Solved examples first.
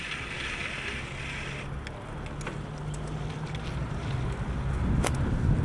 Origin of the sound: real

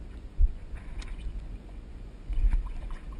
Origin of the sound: fake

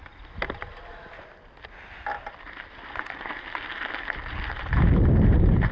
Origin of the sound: real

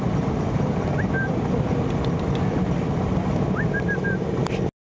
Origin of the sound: real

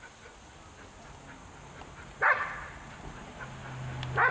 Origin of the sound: real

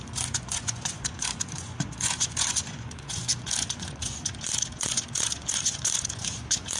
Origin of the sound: fake